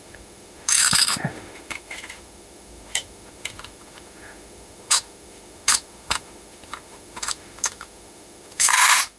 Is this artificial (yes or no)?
yes